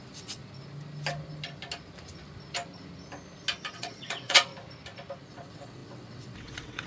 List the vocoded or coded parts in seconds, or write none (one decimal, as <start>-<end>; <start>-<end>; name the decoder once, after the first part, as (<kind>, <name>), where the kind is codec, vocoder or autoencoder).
0.0-0.4 (vocoder, WaveNeXt); 3.7-4.5; 5.3-6.9